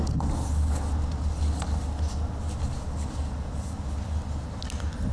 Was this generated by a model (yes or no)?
no